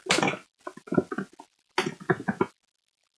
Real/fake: real